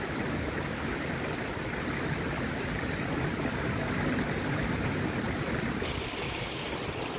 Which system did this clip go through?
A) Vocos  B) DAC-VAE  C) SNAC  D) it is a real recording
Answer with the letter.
D